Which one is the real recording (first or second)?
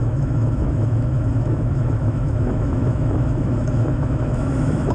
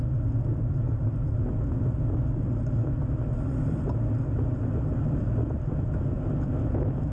second